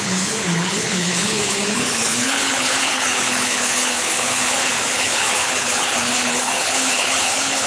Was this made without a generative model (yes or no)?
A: no